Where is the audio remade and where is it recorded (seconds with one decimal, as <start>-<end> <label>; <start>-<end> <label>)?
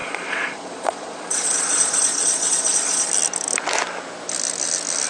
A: 0.0-3.1 remade; 3.1-5.1 recorded